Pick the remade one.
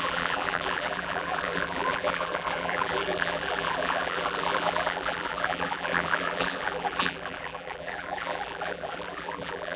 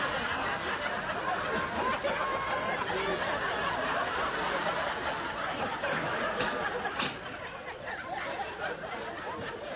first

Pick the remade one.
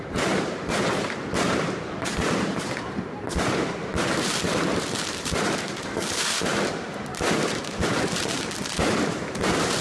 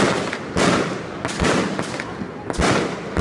first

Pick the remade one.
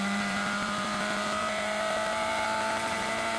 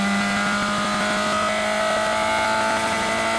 first